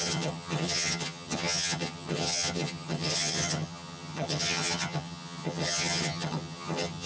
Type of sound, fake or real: fake